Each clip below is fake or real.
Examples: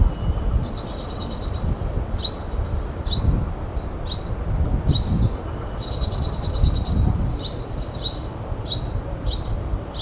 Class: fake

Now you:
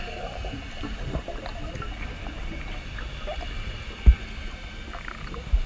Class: fake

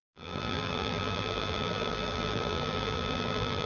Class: fake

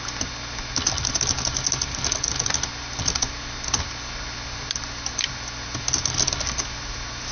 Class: real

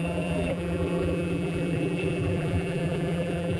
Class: fake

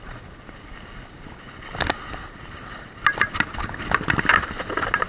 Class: real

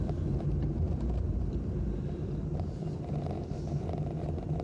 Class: fake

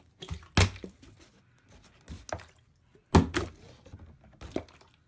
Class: real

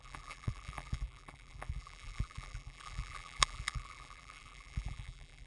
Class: fake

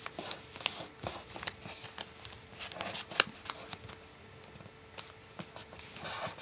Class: real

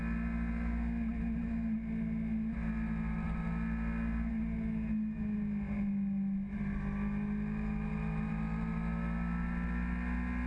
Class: real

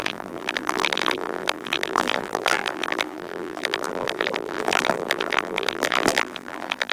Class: fake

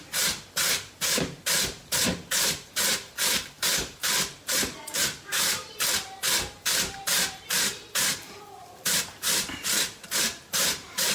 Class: fake